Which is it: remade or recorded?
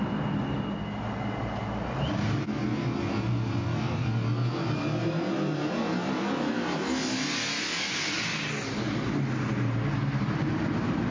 recorded